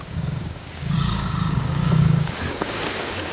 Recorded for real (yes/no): no